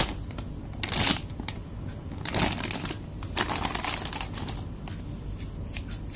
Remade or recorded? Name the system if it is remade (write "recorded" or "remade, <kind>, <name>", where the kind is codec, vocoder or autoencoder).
recorded